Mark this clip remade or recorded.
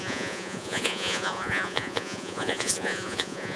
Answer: remade